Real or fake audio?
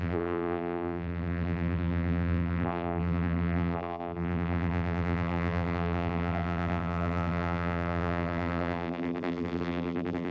fake